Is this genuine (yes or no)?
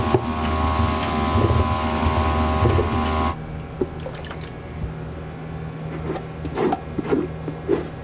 yes